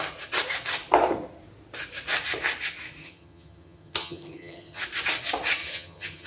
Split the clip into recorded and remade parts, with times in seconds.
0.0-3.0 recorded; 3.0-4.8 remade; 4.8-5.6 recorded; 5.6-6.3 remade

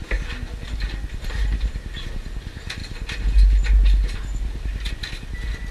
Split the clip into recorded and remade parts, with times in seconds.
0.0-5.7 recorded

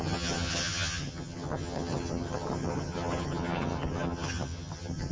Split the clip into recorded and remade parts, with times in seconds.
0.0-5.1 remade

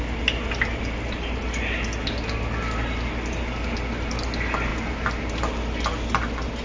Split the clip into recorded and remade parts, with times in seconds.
0.0-6.6 recorded

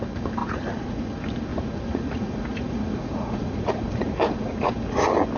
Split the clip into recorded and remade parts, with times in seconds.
0.0-0.4 recorded; 0.4-1.1 remade; 1.1-1.5 recorded; 1.5-4.7 remade; 4.7-5.4 recorded